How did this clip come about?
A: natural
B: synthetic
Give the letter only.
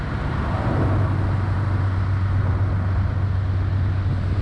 A